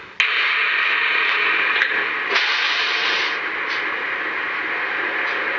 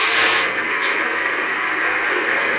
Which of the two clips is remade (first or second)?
second